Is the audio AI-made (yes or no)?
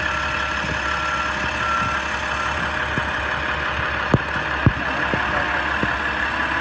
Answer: no